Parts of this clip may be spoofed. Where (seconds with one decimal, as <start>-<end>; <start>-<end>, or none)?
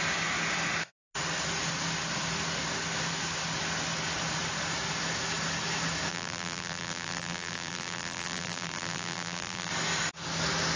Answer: 6.1-9.7